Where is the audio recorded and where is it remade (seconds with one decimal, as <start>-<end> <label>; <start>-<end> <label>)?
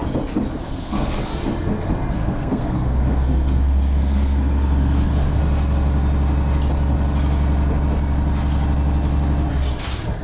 0.0-0.6 recorded; 0.6-1.3 remade; 1.3-2.1 recorded; 2.1-5.4 remade; 5.4-10.2 recorded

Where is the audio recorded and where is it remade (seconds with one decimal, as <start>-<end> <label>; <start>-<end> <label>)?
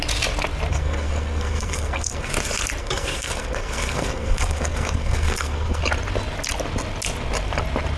0.0-0.7 recorded; 0.7-2.3 remade; 2.3-2.8 recorded; 2.8-5.8 remade; 5.8-8.0 recorded